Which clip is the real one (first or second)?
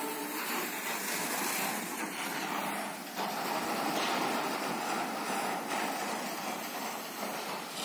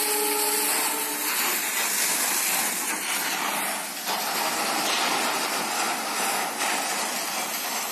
second